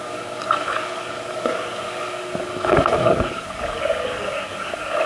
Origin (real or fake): fake